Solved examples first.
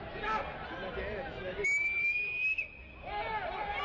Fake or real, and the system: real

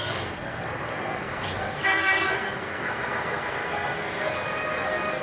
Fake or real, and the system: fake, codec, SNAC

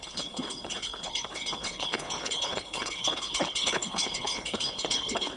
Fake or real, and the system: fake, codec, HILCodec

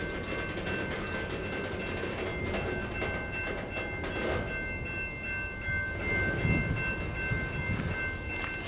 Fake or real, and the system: real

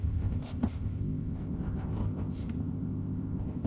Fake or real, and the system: fake, codec, ZipCodec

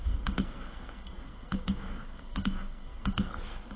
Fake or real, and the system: fake, codec, SNAC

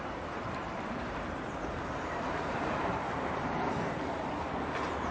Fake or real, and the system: fake, vocoder, BigVGAN v2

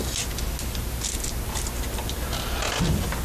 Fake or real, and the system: real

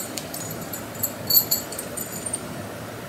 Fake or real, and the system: fake, vocoder, BigVGAN v2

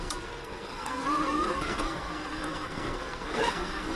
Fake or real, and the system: fake, codec, SNAC